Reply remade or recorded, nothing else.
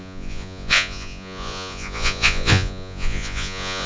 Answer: remade